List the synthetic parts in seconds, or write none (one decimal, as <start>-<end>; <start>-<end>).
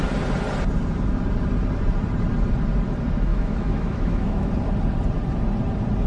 3.3-4.5